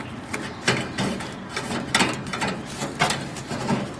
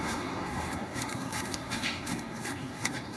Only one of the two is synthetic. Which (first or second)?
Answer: second